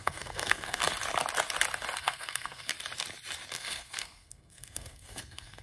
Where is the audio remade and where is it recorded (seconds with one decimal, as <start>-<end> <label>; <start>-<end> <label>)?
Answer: 0.0-0.8 remade; 0.8-2.0 recorded; 2.0-2.7 remade; 2.7-3.5 recorded; 3.5-5.6 remade